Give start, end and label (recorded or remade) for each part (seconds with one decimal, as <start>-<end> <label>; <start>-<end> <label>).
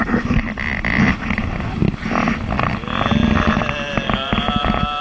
0.0-5.0 recorded